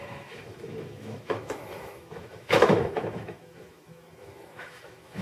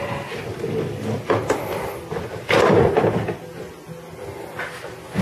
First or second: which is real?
second